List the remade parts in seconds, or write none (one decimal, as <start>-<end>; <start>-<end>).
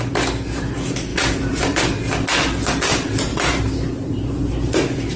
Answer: 1.1-1.8; 3.3-4.8